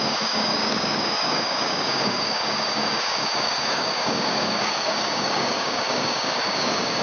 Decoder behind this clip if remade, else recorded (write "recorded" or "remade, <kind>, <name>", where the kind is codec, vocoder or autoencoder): remade, codec, DAC